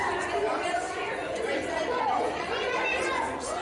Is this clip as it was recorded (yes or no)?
no